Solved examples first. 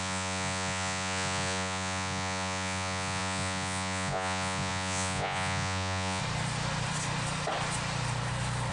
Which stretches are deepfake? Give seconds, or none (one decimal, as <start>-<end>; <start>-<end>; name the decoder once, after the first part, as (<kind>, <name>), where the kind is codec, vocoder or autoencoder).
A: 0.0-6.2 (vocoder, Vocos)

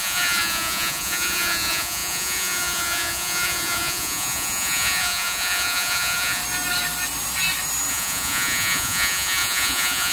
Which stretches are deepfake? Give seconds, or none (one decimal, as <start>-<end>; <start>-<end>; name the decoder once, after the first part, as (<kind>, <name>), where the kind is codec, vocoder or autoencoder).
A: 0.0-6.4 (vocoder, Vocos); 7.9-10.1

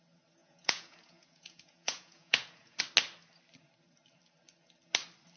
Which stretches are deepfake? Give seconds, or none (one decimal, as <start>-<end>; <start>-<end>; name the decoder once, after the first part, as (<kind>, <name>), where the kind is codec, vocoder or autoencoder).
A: 0.4-2.8 (vocoder, Vocos)

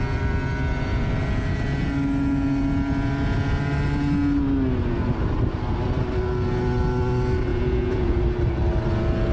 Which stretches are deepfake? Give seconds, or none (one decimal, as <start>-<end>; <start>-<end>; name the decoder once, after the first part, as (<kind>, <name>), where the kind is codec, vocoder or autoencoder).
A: 7.5-8.2 (vocoder, Vocos)

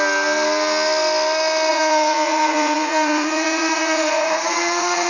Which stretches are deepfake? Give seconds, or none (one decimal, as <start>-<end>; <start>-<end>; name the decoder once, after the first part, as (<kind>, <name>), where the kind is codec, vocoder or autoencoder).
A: 1.7-5.1 (vocoder, Vocos)

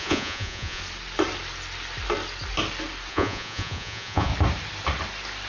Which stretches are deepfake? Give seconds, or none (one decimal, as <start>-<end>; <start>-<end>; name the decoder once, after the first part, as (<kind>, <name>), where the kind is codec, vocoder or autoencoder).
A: 0.0-0.8 (vocoder, Vocos); 3.1-4.3

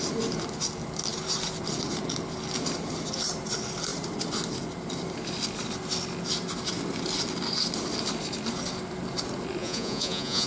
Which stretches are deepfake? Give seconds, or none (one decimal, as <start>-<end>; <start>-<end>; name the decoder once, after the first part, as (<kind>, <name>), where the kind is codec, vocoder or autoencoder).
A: 9.6-10.5 (vocoder, Vocos)